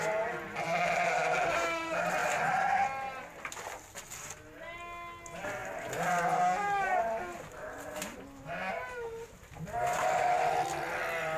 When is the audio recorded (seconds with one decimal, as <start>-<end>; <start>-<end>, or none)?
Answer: 0.0-11.4

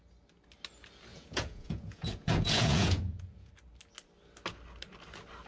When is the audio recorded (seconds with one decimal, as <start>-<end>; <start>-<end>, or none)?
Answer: 0.0-1.1; 3.5-5.5

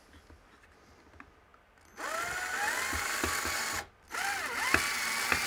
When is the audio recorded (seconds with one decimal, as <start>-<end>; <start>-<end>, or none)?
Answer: 0.0-5.5

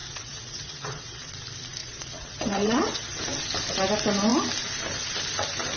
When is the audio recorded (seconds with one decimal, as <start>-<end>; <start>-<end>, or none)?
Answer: 1.3-1.8; 3.2-5.8

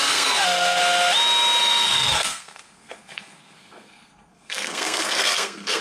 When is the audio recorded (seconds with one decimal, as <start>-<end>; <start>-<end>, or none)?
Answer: 0.8-1.6

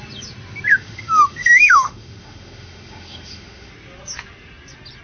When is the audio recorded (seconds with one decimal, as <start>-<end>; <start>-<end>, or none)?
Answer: 0.0-0.7; 3.7-5.0